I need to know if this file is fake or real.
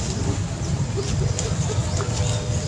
real